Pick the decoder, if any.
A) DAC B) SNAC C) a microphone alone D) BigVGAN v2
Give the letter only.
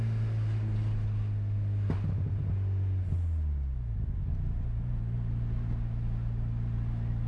C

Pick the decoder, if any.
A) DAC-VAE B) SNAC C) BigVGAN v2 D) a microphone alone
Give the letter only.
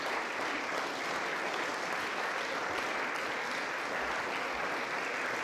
D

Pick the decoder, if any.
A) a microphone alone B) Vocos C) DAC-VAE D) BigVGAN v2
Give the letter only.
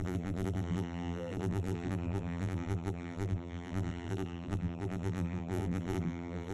D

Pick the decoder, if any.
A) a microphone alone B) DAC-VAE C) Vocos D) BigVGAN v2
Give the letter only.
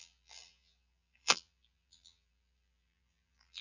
D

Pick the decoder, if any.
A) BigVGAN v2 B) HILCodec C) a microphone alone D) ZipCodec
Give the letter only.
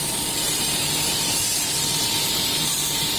A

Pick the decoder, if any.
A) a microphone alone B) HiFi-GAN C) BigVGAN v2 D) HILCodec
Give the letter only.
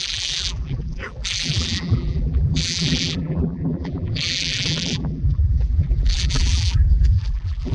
C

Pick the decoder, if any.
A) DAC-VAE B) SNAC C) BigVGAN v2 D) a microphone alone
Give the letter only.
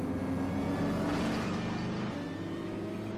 D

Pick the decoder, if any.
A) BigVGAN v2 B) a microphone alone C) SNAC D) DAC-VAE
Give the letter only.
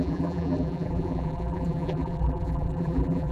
A